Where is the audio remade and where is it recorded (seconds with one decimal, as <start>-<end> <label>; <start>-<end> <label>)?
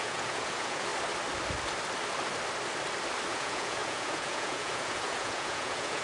0.0-0.9 remade; 0.9-3.3 recorded; 3.3-6.0 remade